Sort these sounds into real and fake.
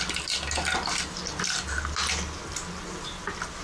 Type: real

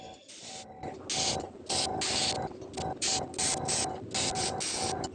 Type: real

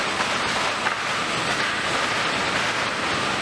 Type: real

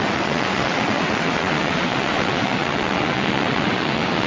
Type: fake